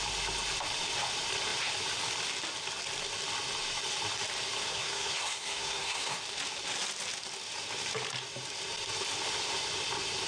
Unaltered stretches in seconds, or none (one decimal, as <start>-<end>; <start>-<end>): 0.0-4.7; 6.2-10.3